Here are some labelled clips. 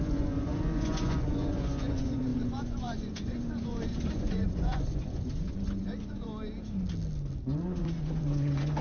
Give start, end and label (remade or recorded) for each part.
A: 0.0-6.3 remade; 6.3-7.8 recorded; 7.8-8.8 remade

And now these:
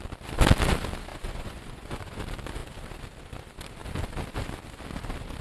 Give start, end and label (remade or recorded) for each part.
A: 0.0-1.1 recorded; 1.1-2.2 remade; 2.2-5.4 recorded

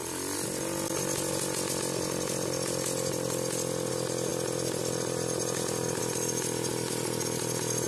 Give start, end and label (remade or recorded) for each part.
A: 0.0-7.9 recorded

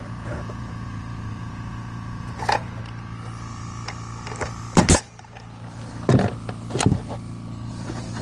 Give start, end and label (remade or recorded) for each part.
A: 0.0-2.8 remade; 2.8-7.7 recorded; 7.7-8.2 remade